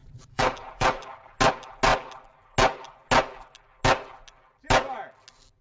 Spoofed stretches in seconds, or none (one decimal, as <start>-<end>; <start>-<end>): 0.0-1.3